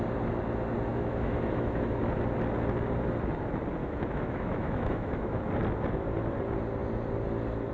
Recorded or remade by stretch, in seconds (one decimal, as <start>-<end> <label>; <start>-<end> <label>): 0.0-0.9 recorded; 0.9-2.0 remade; 2.0-3.8 recorded; 3.8-5.5 remade; 5.5-7.7 recorded